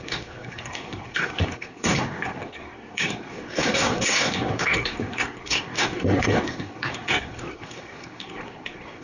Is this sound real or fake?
fake